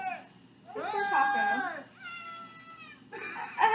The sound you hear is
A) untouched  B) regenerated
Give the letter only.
A